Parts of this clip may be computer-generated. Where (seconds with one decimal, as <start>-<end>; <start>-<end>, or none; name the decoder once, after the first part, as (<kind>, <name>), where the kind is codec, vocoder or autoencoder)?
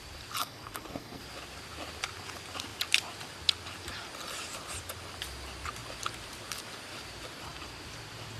0.4-1.2 (codec, SNAC)